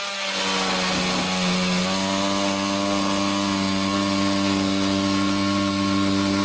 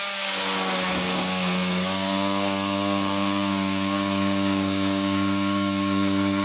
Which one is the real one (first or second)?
first